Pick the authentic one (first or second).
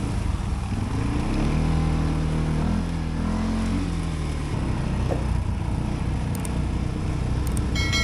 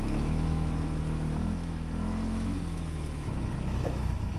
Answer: first